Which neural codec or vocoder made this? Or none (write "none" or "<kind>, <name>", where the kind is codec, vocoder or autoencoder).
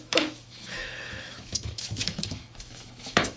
autoencoder, DAC-VAE